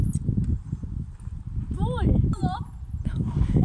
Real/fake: real